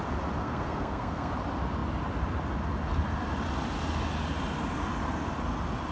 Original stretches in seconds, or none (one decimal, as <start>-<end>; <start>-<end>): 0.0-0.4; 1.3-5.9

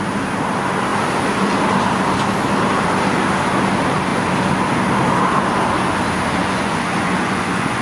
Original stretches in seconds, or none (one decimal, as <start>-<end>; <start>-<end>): 0.0-6.4

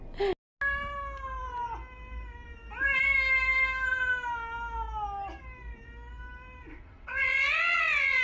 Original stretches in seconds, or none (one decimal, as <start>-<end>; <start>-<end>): 0.0-6.7